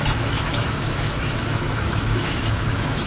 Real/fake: fake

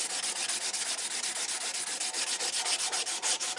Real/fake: real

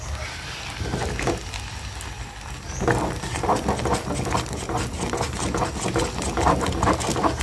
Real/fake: real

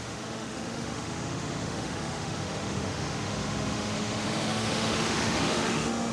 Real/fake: fake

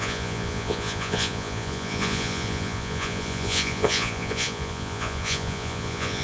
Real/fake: fake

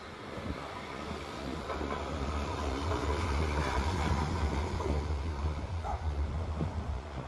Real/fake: fake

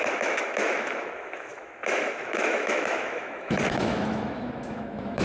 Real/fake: fake